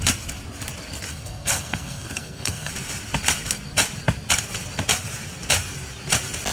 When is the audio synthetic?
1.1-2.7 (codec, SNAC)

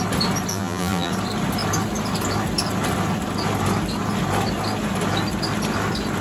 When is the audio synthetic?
0.5-1.1 (vocoder, BigVGAN v2)

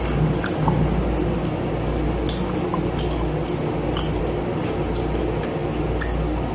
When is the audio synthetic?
none